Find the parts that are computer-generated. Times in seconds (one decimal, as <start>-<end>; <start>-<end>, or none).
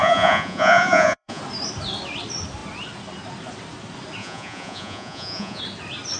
0.0-1.4; 4.2-5.6